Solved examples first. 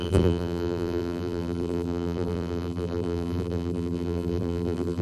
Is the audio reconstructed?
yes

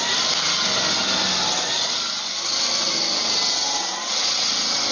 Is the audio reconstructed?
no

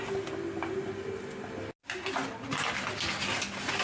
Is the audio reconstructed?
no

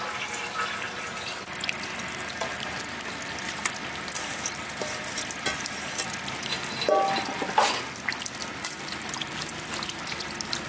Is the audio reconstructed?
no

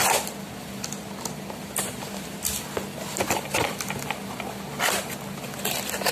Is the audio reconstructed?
no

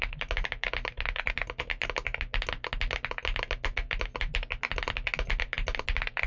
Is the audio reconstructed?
no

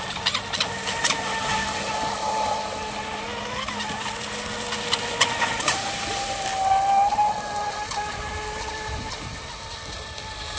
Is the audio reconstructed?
no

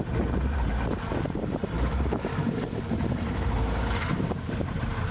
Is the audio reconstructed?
yes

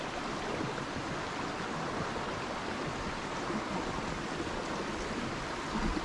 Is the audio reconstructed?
no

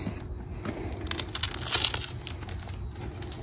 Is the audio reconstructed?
no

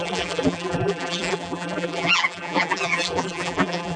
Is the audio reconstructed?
yes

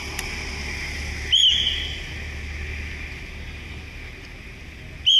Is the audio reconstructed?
no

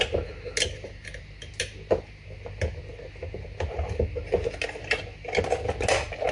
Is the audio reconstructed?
no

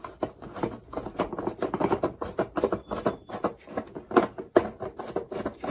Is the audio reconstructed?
no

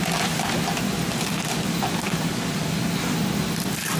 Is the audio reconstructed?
no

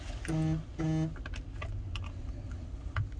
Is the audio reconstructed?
no